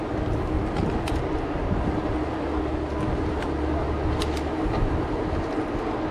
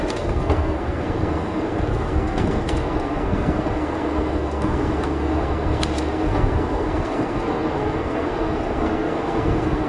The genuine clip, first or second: first